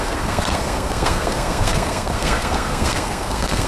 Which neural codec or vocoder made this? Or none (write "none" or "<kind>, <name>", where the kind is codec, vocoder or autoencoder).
codec, SNAC